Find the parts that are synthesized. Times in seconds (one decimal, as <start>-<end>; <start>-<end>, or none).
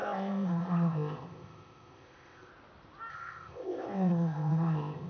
0.0-2.5; 3.1-5.1